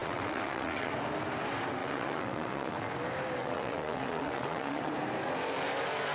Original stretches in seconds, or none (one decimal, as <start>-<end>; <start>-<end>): 0.9-1.8; 2.9-3.4; 4.9-6.1